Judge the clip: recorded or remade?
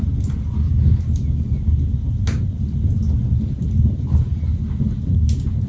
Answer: recorded